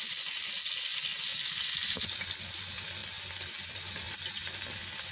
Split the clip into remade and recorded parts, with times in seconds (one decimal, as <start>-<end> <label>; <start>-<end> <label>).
0.0-5.1 recorded